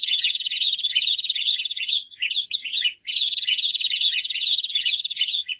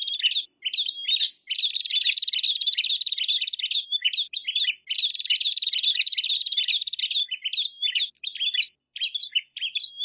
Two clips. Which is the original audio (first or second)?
second